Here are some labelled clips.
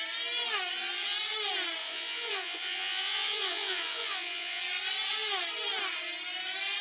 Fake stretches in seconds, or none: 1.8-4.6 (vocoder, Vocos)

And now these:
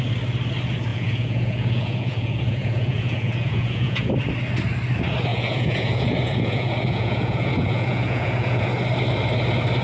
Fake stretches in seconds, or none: 0.9-4.1 (vocoder, Vocos); 5.3-8.7

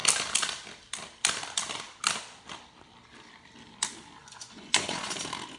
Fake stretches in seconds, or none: 4.2-5.1 (vocoder, Vocos)

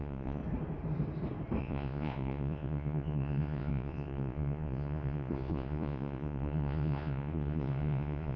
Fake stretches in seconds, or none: 0.0-0.4 (vocoder, Vocos); 1.6-8.4

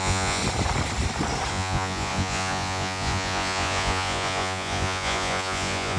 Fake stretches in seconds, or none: 0.0-0.4 (vocoder, Vocos); 1.5-6.0

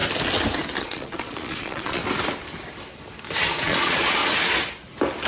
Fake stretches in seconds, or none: 0.8-2.0 (vocoder, Vocos); 3.4-4.2